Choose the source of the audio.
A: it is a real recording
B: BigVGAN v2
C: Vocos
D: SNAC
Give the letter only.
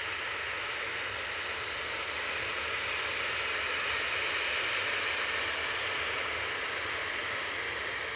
A